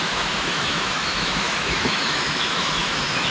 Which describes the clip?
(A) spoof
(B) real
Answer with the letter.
A